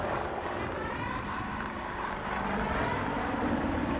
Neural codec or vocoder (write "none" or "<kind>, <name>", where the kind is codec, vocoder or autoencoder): none